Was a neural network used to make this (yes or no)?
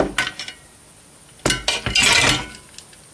no